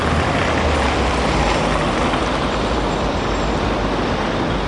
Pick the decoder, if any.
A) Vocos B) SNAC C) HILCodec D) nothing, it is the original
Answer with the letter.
D